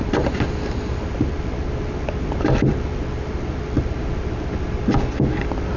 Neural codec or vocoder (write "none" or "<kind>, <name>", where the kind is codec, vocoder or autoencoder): none